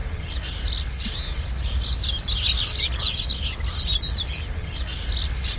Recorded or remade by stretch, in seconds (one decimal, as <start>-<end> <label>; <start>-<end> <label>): 0.0-5.6 recorded